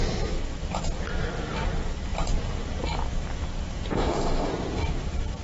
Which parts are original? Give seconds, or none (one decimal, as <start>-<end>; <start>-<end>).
0.0-3.9; 4.5-5.4